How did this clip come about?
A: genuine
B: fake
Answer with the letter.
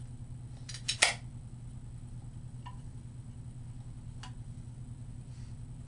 A